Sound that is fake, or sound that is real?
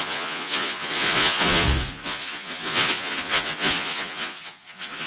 fake